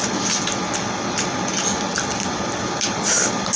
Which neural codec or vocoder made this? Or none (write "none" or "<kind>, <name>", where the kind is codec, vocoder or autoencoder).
none